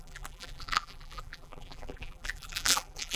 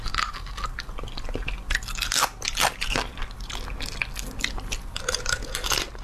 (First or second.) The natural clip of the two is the second